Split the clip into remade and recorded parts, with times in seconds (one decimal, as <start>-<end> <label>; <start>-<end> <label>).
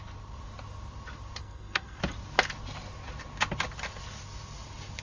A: 0.0-1.4 recorded; 1.4-2.0 remade; 2.0-5.0 recorded